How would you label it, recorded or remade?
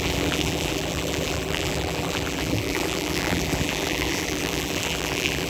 remade